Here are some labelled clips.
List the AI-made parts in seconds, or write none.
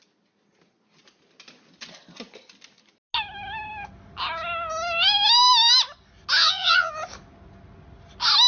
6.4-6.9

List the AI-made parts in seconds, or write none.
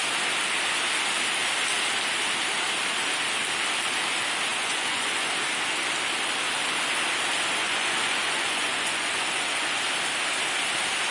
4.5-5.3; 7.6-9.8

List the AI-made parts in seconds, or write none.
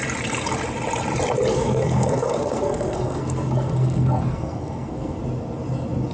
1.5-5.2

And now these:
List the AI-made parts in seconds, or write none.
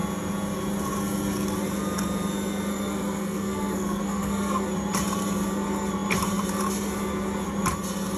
2.7-4.6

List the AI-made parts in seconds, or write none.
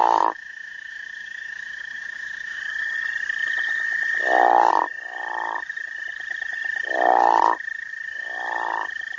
0.0-2.6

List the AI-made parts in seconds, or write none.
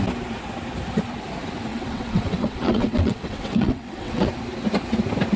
1.7-4.3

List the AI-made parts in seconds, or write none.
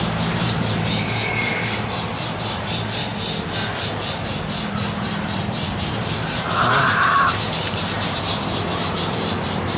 0.0-3.1; 3.8-5.4; 6.0-9.8